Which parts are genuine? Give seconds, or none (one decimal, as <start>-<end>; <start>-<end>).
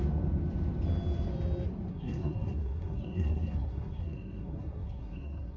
0.0-1.9